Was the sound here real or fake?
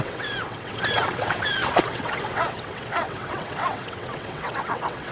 fake